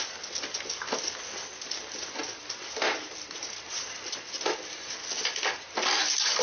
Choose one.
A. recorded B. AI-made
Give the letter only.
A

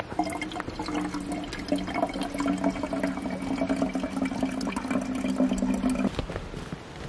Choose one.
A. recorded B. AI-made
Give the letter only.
A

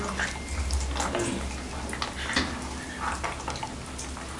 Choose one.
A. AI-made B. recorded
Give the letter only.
B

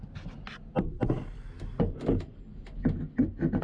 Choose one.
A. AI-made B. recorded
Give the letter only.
B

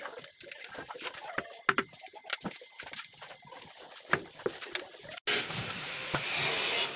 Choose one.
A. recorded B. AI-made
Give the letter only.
A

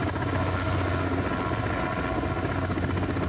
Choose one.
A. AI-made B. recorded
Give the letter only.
B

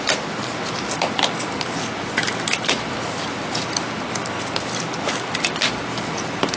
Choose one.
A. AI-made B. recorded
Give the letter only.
B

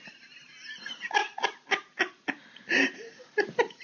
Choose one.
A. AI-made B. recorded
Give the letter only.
B